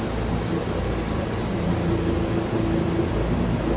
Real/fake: real